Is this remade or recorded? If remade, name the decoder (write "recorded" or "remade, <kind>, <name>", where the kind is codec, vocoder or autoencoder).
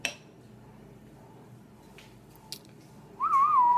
recorded